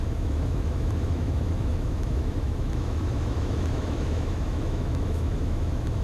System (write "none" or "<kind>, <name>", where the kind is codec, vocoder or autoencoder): autoencoder, DAC-VAE